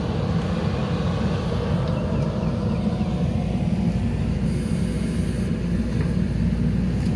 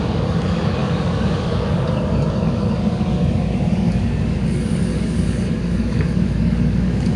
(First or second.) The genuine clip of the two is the first